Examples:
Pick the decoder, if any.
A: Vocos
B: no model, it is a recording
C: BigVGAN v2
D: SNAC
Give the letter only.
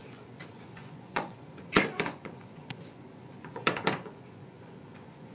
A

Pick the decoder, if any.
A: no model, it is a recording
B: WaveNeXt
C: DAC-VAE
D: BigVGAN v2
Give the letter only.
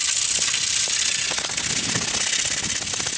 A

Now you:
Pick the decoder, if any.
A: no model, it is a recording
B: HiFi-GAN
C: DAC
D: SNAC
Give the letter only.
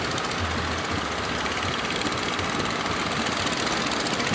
A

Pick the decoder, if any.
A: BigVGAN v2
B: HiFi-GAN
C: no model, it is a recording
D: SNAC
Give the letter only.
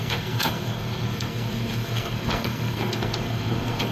D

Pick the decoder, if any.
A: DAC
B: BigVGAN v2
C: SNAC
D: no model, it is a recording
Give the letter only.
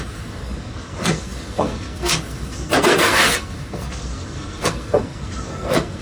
C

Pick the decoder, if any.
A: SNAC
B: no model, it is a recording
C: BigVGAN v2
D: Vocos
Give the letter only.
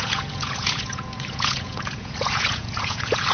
D